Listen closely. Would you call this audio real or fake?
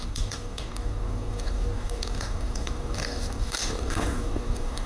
fake